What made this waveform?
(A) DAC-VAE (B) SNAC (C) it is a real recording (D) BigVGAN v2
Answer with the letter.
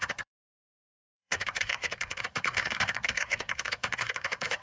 B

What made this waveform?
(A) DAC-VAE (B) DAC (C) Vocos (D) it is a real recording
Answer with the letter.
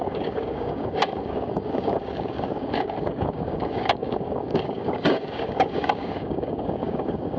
B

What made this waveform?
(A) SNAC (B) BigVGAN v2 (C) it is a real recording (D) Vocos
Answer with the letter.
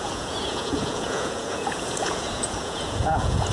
D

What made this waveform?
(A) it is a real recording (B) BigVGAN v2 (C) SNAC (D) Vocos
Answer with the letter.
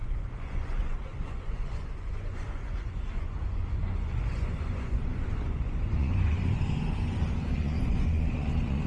D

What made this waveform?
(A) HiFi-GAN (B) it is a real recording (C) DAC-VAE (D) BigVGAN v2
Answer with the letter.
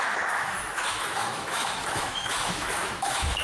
C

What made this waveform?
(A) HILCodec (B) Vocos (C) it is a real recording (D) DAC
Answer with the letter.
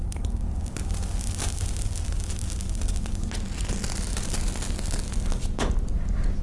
C